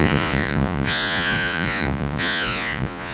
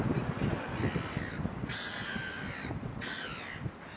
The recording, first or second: second